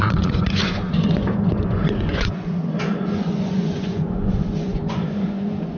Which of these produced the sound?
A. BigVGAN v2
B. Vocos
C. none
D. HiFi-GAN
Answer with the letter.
B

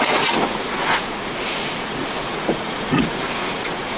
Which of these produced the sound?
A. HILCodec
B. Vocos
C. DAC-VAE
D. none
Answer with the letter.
B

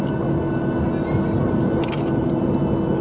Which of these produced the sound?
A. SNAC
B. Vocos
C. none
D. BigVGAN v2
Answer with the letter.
C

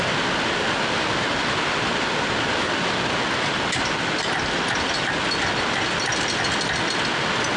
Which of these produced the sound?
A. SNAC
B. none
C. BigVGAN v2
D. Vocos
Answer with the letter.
B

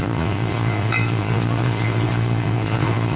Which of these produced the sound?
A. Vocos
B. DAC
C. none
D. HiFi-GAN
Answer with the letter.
A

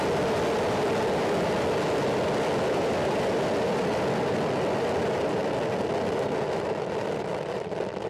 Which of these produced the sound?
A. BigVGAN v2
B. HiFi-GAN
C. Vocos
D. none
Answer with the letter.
D